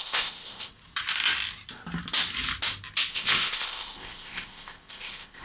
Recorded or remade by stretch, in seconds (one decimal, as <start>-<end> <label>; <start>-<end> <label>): 0.0-0.7 remade; 0.7-3.1 recorded; 3.1-5.4 remade